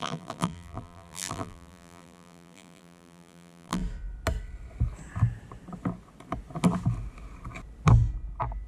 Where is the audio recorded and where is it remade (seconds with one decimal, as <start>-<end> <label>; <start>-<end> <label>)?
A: 0.0-3.8 remade; 3.8-8.7 recorded